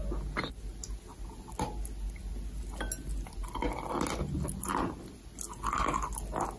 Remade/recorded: recorded